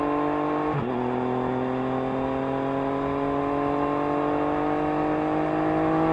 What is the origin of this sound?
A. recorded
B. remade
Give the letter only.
A